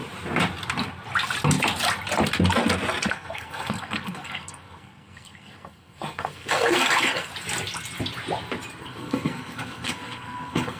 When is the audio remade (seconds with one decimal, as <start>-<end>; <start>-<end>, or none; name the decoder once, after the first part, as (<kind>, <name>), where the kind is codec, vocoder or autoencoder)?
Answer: 3.1-7.3 (codec, SNAC); 8.8-10.8